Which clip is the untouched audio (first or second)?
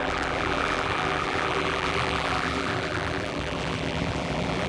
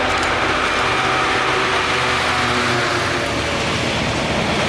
second